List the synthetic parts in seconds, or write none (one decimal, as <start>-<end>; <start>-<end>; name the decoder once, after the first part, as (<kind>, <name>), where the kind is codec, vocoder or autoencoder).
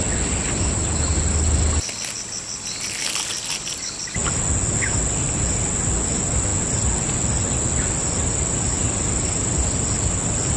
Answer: none